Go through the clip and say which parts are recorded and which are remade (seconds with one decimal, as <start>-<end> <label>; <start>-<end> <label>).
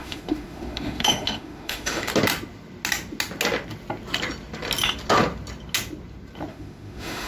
0.0-2.1 remade; 2.1-6.5 recorded; 6.5-7.3 remade